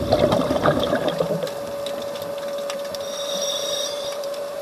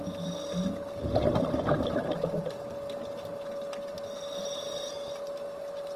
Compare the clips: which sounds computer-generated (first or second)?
first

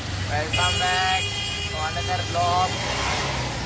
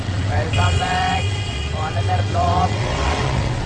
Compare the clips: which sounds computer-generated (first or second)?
second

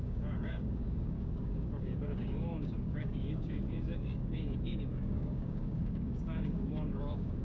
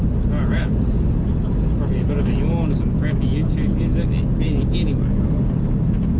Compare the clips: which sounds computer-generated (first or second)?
first